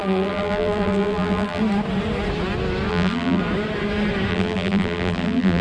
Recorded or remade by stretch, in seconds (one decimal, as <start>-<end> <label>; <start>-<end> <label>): 0.0-1.6 remade; 1.6-2.9 recorded; 2.9-3.4 remade; 3.4-4.3 recorded; 4.3-5.6 remade